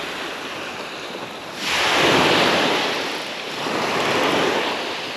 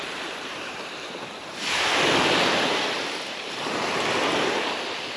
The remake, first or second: second